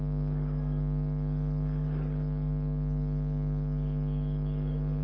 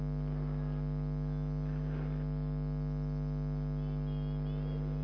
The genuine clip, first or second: second